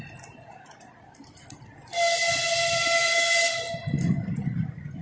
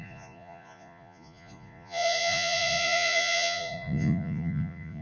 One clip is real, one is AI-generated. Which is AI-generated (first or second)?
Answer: second